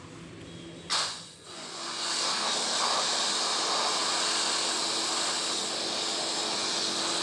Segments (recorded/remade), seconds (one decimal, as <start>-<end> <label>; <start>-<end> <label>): 0.0-0.9 recorded; 0.9-2.1 remade; 2.1-7.2 recorded